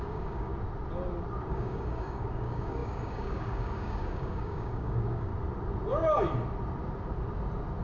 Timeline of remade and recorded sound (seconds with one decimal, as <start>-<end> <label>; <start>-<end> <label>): 0.0-0.5 remade; 0.5-1.5 recorded; 1.5-5.3 remade; 5.3-7.8 recorded